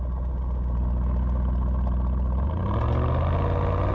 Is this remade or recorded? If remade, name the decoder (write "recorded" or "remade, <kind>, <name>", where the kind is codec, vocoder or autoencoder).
recorded